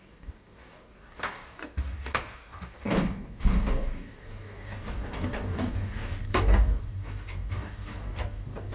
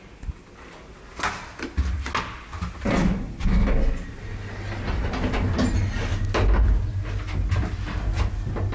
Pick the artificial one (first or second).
first